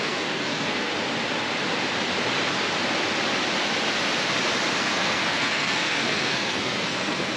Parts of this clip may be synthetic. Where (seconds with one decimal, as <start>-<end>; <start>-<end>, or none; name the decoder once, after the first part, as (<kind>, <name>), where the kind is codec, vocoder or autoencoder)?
0.0-0.9 (codec, SNAC); 4.8-7.4